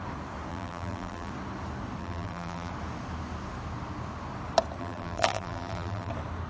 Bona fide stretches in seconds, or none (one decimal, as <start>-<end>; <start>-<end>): 0.0-0.5; 1.3-2.0; 2.7-4.8; 6.1-6.5